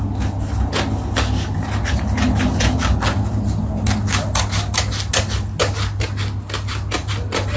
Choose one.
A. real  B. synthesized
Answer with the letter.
A